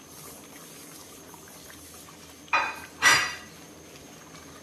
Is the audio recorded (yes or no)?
yes